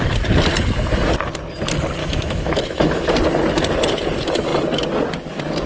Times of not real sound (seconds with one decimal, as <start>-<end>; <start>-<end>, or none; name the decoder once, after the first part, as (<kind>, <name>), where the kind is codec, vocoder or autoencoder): 2.0-3.1 (autoencoder, DAC-VAE)